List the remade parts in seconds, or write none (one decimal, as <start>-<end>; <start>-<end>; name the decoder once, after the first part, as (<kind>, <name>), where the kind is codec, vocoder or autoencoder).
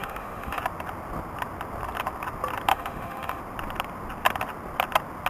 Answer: 0.0-0.6 (autoencoder, DAC-VAE); 2.7-3.4